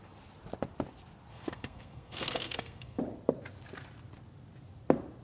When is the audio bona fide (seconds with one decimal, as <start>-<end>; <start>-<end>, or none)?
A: 0.0-1.3; 3.0-5.2